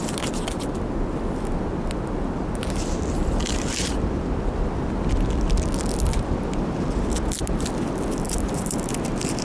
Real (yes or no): yes